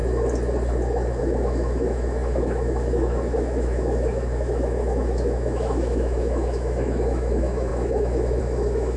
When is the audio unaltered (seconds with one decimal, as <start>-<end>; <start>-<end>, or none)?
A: 0.0-1.2